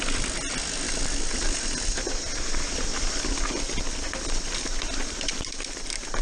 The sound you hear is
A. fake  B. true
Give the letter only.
B